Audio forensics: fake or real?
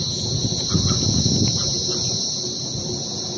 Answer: real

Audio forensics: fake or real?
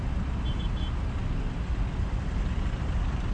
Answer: real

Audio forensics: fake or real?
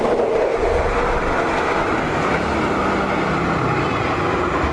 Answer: real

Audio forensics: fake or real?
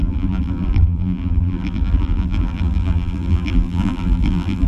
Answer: fake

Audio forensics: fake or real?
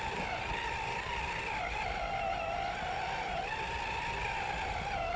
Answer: real